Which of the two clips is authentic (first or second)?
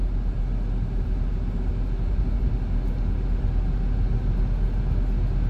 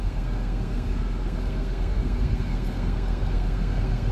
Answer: first